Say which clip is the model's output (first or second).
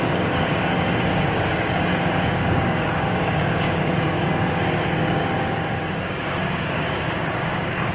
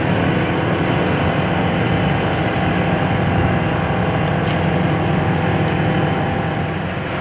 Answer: first